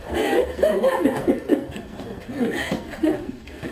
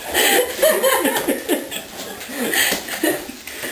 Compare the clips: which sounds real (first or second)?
second